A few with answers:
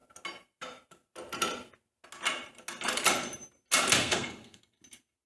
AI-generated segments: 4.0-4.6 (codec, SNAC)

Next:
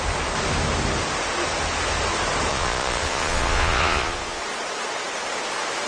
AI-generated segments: 2.5-4.4 (vocoder, Vocos)

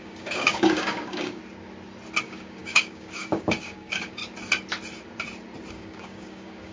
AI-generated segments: 0.0-1.4 (codec, DAC); 2.2-4.2; 5.7-6.7

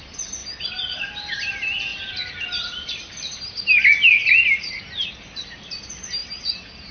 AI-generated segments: 0.4-1.0 (vocoder, BigVGAN v2); 1.9-3.6; 6.2-6.9

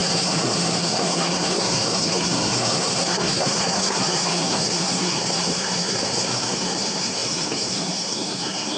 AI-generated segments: 0.0-8.8 (codec, SNAC)